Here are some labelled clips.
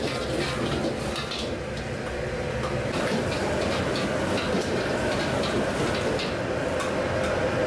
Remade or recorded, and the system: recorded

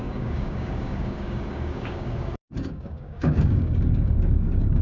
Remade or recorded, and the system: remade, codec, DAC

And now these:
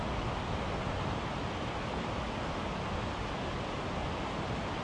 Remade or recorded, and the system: recorded